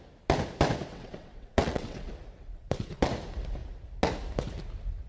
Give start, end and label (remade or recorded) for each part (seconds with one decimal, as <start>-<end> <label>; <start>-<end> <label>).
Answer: 0.0-0.9 recorded; 0.9-2.1 remade; 2.1-2.6 recorded; 2.6-3.1 remade; 3.1-5.1 recorded